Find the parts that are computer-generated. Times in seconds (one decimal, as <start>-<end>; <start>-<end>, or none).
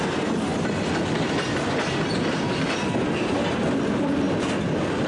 none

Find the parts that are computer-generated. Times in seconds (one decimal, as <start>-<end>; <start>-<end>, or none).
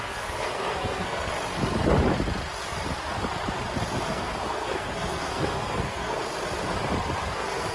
0.0-1.3; 4.1-6.2; 7.3-7.7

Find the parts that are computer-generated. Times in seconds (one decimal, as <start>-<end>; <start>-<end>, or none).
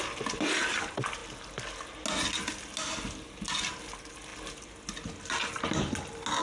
none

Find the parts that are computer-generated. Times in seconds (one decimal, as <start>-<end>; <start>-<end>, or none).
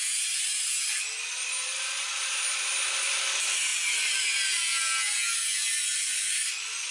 none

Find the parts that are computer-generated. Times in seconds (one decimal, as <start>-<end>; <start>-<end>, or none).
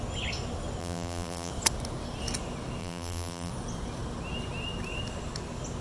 0.8-1.5; 2.8-3.5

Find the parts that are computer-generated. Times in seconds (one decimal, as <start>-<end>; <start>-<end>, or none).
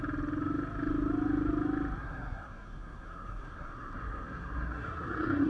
2.0-5.5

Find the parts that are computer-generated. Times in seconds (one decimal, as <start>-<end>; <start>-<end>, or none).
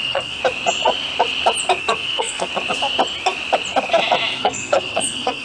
0.0-0.4; 1.8-2.5; 4.3-5.4